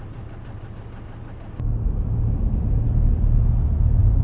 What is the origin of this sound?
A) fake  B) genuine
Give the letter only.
B